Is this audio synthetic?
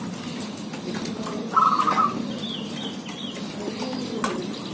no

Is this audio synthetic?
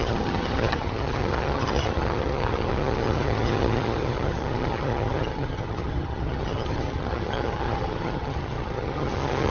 yes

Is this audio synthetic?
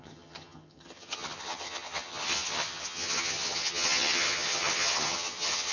yes